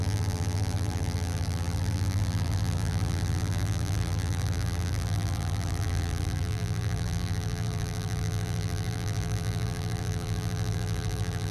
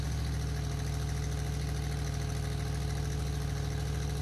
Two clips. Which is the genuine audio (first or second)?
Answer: second